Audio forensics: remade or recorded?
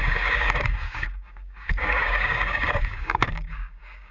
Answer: remade